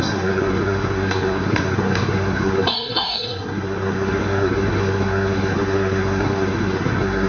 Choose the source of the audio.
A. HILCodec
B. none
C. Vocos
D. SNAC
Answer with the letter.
D